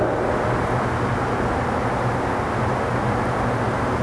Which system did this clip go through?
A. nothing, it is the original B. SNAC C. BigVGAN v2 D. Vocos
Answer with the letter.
A